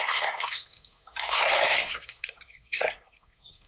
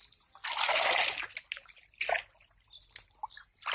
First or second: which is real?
second